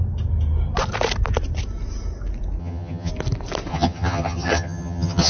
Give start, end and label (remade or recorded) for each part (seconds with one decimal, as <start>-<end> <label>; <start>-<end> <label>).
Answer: 0.0-2.6 recorded; 2.6-3.1 remade; 3.1-3.7 recorded; 3.7-5.3 remade